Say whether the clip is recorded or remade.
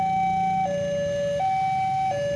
recorded